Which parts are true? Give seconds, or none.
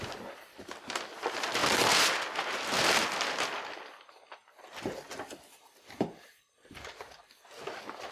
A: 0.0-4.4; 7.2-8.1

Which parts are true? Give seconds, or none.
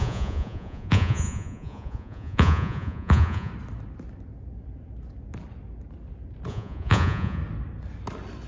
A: 3.5-6.5; 7.4-8.5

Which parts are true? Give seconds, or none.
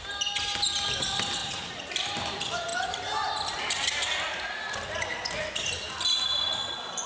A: 0.0-1.4; 1.9-7.1